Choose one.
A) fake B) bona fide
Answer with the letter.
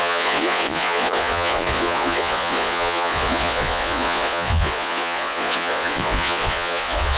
A